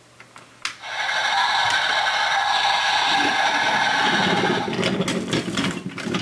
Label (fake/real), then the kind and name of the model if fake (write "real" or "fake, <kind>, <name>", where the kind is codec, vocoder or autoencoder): real